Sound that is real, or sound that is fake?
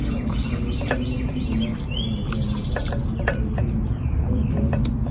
real